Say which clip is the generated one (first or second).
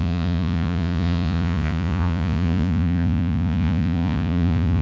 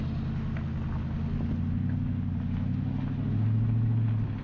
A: first